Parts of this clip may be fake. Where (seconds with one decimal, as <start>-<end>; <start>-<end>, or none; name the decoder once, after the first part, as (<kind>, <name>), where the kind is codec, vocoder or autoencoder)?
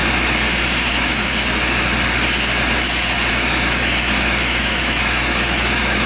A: 0.9-1.3 (autoencoder, DAC-VAE); 3.3-6.1